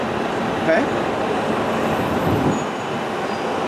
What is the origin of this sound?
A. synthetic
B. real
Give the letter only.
B